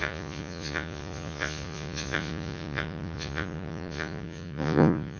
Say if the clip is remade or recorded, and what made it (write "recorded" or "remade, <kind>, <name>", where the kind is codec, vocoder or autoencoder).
remade, vocoder, Vocos